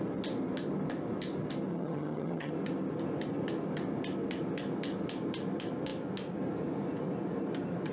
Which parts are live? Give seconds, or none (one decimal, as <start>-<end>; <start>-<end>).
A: 0.0-1.7; 2.5-7.9